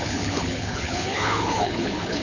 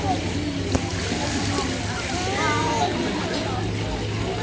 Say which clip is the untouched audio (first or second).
second